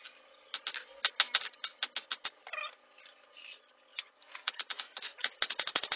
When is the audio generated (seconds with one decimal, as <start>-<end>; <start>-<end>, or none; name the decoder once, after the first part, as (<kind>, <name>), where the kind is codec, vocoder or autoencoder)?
3.9-5.3 (vocoder, Vocos)